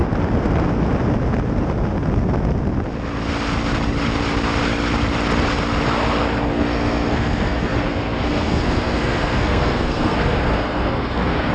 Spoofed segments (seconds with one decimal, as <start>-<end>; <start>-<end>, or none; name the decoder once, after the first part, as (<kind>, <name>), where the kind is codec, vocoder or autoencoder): 6.5-11.5 (codec, SNAC)